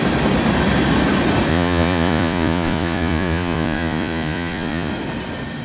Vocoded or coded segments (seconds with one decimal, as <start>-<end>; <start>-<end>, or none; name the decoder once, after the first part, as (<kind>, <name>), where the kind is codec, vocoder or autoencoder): 1.5-4.9 (vocoder, Vocos)